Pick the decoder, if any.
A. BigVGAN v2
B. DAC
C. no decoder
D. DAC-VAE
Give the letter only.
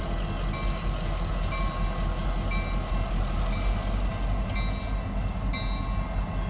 C